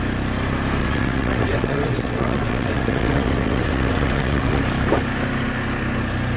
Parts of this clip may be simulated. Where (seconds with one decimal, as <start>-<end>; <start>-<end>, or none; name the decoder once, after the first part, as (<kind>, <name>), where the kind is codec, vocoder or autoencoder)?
0.8-4.6 (vocoder, WaveNeXt)